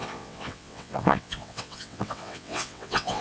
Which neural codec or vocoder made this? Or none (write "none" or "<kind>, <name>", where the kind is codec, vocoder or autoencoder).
vocoder, WaveNeXt